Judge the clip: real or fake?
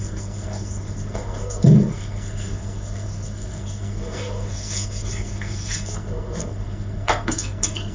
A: fake